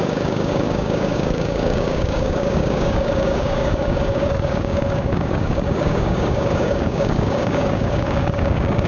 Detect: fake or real fake